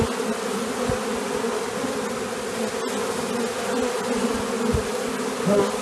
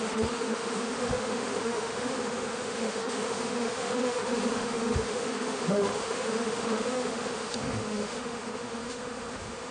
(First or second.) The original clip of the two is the first